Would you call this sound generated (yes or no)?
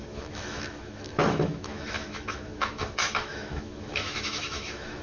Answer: yes